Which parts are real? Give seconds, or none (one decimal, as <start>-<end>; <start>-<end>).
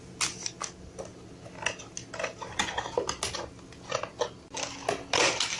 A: 0.0-5.6